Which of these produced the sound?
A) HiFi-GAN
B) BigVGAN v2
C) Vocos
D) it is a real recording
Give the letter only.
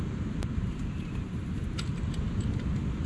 B